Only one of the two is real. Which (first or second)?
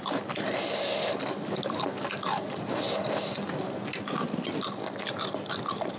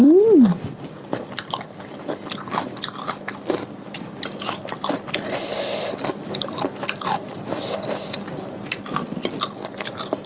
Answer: first